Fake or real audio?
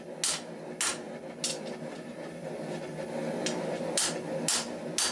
real